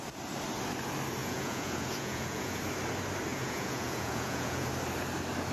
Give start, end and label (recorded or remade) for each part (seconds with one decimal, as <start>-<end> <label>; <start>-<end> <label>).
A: 0.0-1.2 recorded; 1.2-2.6 remade; 2.6-3.3 recorded; 3.3-4.7 remade; 4.7-5.5 recorded